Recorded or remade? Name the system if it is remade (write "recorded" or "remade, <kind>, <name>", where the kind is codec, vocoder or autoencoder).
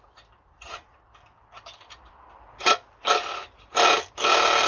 recorded